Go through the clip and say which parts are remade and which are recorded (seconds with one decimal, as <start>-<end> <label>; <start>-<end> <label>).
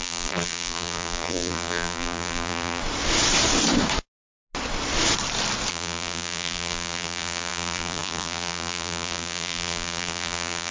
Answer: 0.0-2.8 remade; 2.8-5.7 recorded; 5.7-10.7 remade